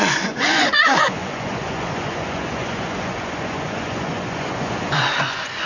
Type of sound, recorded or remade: remade